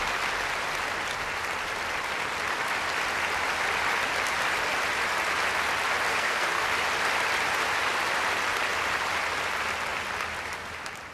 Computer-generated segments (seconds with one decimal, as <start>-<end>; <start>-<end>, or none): 6.1-6.7